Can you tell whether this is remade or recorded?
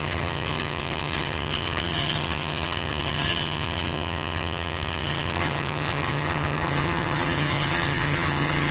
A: remade